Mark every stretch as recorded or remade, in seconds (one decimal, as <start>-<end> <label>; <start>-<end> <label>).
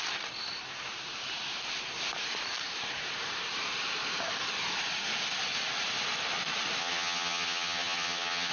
0.0-6.8 recorded; 6.8-8.5 remade